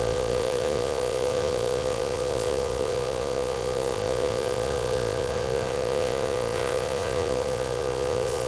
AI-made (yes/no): yes